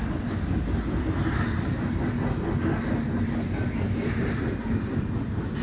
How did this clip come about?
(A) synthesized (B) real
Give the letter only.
B